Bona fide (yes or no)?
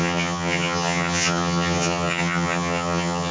no